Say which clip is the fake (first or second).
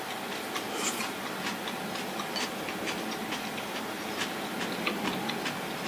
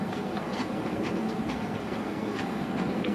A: second